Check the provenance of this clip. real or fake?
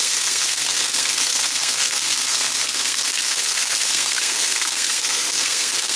fake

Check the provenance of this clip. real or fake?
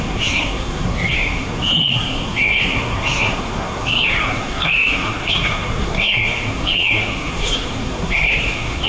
fake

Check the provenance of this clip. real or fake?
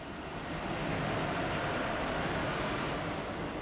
real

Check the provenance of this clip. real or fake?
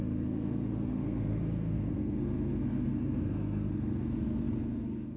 fake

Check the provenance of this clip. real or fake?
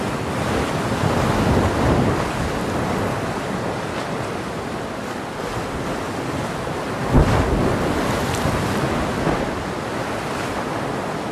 real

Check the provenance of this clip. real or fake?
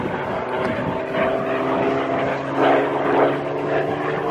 real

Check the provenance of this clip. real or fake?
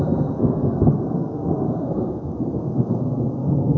fake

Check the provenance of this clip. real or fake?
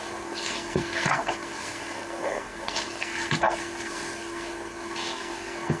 fake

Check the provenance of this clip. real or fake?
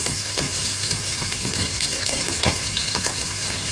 fake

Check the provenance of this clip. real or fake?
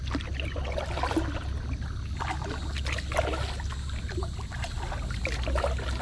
real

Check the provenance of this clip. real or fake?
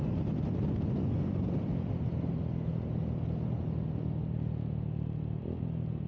real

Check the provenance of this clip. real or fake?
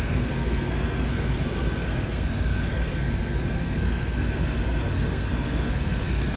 fake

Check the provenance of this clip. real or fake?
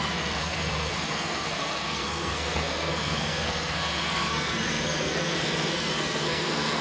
fake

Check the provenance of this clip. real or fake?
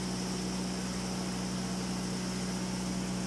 real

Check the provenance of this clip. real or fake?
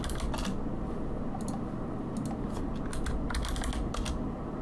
real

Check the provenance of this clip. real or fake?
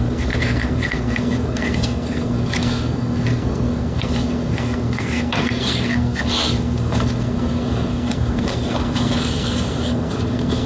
fake